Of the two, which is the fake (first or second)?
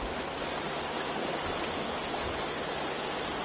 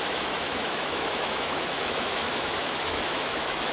second